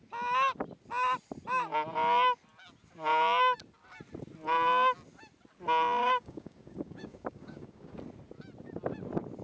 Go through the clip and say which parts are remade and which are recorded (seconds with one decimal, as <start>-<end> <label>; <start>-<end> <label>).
0.0-6.0 recorded; 6.0-8.0 remade; 8.0-9.4 recorded